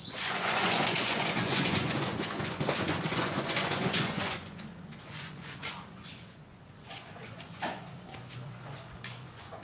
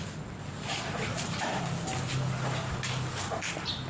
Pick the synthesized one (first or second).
first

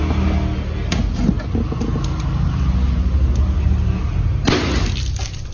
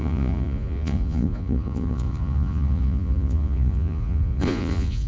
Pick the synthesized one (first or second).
second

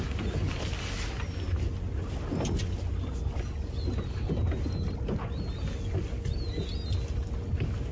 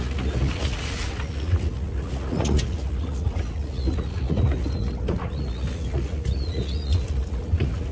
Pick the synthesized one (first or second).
second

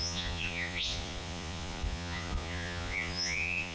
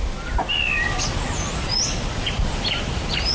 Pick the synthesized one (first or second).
first